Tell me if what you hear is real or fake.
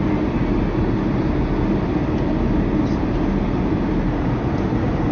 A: real